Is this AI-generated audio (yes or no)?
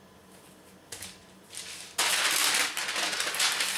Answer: no